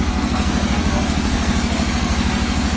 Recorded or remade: remade